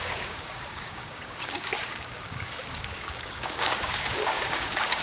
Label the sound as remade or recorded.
remade